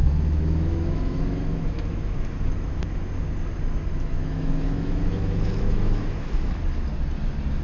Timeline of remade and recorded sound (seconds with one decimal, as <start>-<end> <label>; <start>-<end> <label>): 0.0-3.1 remade; 3.1-3.9 recorded; 3.9-6.6 remade; 6.6-7.6 recorded